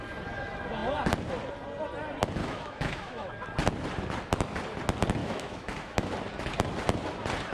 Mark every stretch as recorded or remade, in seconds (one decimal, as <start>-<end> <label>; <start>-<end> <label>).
0.0-2.4 recorded; 2.4-3.3 remade; 3.3-5.2 recorded; 5.2-6.1 remade; 6.1-7.5 recorded